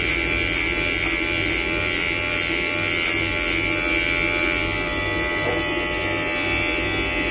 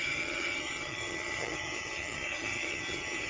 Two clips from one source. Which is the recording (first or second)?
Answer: first